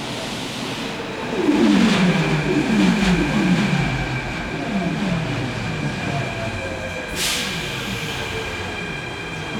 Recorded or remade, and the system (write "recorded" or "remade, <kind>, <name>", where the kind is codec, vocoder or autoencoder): recorded